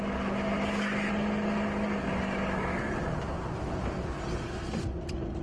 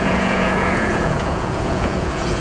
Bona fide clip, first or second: first